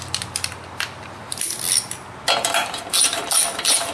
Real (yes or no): yes